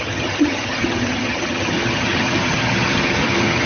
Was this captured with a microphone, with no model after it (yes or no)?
no